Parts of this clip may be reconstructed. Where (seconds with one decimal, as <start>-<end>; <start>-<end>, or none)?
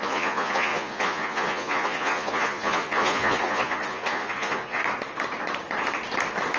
0.0-4.8